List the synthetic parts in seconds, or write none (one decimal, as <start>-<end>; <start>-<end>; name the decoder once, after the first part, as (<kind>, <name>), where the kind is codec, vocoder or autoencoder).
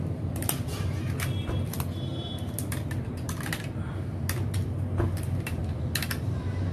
none